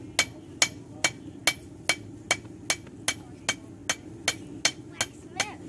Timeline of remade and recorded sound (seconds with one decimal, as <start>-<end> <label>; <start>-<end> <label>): 0.0-5.7 recorded

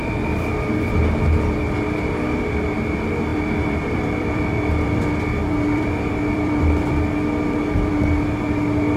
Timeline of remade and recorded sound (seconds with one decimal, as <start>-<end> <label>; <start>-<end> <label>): 0.0-1.0 remade; 1.0-3.3 recorded; 3.3-5.0 remade; 5.0-5.4 recorded; 5.4-7.9 remade; 7.9-9.0 recorded

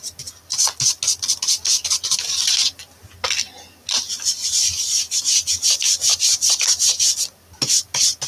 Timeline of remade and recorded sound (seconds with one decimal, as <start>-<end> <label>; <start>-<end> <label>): 0.0-4.3 recorded; 4.3-5.3 remade; 5.3-6.1 recorded; 6.1-6.6 remade; 6.6-8.3 recorded

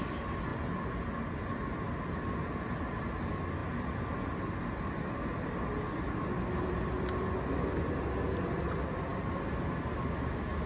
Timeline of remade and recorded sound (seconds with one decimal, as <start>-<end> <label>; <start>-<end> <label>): 0.0-10.7 recorded

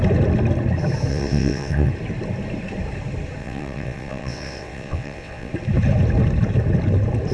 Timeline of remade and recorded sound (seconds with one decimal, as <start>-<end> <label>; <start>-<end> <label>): 0.0-1.1 recorded; 1.1-1.9 remade; 1.9-3.4 recorded; 3.4-5.5 remade; 5.5-7.3 recorded

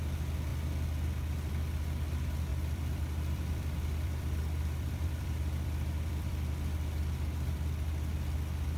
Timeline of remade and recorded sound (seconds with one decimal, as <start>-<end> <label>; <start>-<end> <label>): 0.0-2.5 recorded; 2.5-6.5 remade; 6.5-8.8 recorded